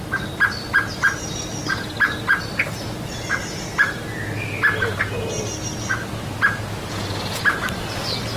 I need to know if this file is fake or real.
real